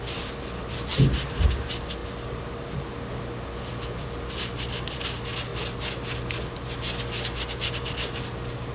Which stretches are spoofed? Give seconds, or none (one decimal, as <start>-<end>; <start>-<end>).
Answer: 0.9-1.5